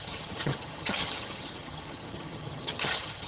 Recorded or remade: remade